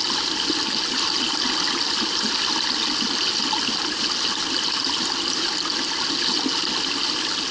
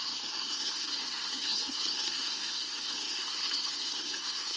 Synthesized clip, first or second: second